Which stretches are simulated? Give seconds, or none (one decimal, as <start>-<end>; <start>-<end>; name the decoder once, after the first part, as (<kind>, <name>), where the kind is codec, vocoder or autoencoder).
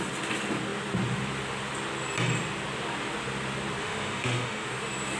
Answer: 3.8-4.7 (autoencoder, DAC-VAE)